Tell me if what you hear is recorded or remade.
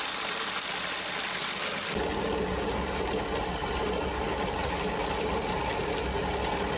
recorded